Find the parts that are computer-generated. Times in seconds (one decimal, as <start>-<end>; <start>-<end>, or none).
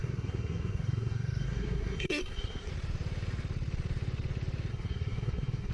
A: 0.0-2.7; 4.7-5.7